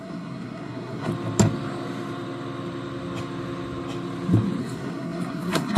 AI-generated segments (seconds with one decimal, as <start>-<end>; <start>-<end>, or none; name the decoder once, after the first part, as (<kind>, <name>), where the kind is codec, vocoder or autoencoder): 0.0-1.1 (codec, SNAC); 4.6-5.8